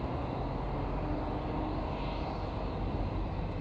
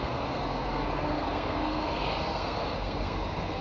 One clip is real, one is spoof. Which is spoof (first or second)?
second